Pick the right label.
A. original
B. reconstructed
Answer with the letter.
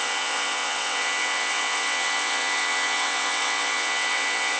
B